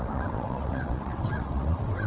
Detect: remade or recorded remade